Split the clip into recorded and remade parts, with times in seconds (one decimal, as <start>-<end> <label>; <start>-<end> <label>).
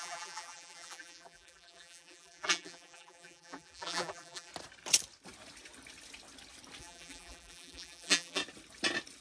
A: 0.0-4.5 remade; 4.5-6.8 recorded; 6.8-8.4 remade; 8.4-9.2 recorded